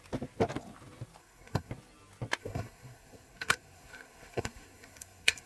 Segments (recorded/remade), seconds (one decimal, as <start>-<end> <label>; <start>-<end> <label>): 0.0-1.2 recorded; 1.2-1.7 remade; 1.7-2.4 recorded; 2.4-5.5 remade